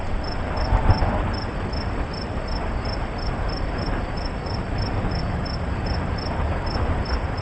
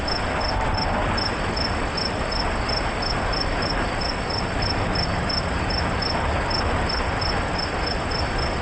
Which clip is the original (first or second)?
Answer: second